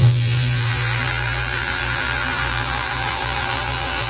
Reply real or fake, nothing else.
fake